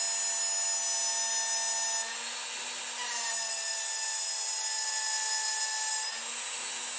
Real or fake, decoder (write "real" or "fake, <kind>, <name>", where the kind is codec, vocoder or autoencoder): real